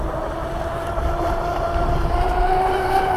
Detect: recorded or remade remade